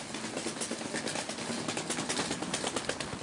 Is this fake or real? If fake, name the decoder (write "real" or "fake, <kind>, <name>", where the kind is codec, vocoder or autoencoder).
real